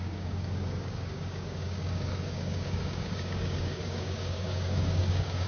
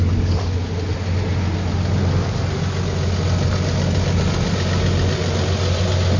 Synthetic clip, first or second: first